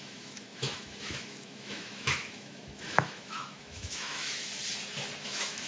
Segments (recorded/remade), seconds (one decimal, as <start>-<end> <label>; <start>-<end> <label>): 0.0-4.5 remade; 4.5-5.2 recorded; 5.2-5.7 remade